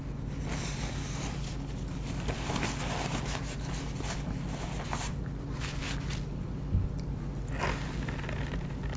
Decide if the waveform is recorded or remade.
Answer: recorded